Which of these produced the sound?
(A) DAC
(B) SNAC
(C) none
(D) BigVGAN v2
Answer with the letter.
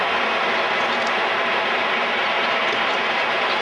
D